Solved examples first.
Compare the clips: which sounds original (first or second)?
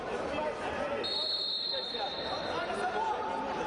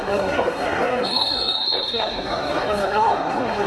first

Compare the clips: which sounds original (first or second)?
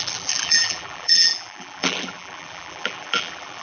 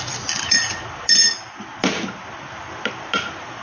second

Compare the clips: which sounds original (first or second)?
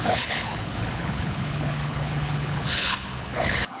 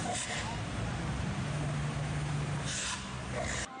second